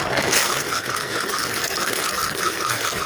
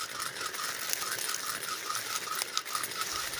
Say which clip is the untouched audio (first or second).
second